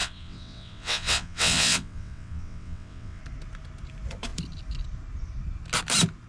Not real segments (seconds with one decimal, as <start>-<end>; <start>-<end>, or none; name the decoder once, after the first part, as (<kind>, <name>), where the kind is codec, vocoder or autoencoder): 0.0-3.2 (vocoder, WaveNeXt)